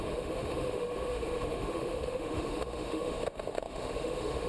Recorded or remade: remade